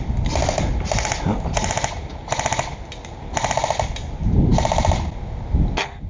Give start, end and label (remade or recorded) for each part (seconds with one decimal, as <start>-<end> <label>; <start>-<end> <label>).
0.0-6.1 recorded